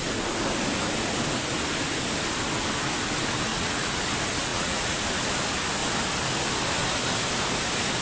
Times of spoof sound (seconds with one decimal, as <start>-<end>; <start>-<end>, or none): 3.5-4.0; 4.5-5.0